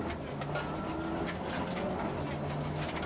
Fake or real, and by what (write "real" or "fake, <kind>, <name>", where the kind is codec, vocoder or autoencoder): real